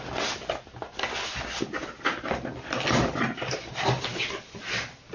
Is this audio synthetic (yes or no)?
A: no